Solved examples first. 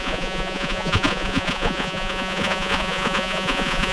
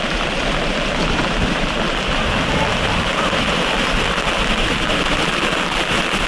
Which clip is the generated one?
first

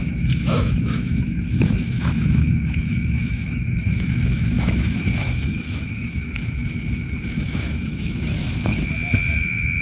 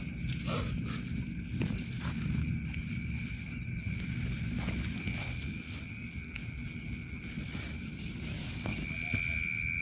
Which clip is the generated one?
first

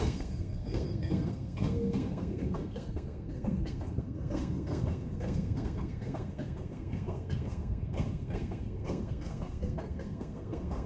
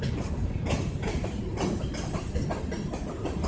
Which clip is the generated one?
first